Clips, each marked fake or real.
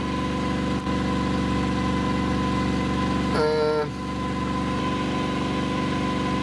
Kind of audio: real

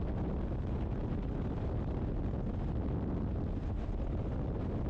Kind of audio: real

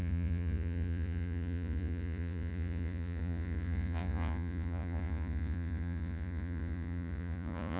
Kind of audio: fake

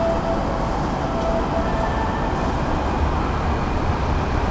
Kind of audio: real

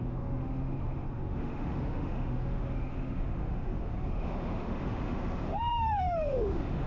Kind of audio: fake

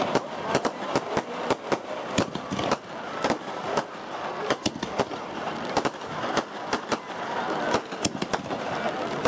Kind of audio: real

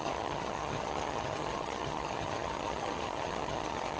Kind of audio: fake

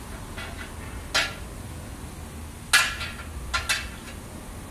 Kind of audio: real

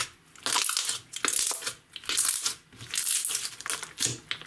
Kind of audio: real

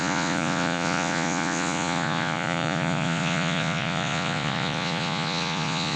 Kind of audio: fake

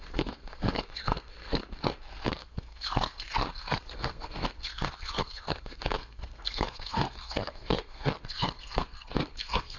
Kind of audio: fake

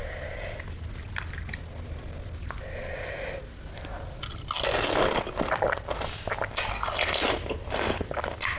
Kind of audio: real